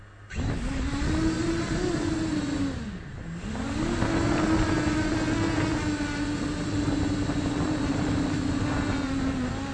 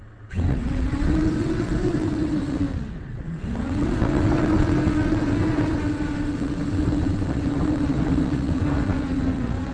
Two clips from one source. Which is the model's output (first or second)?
second